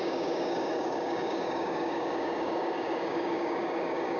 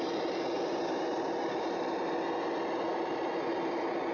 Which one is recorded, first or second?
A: second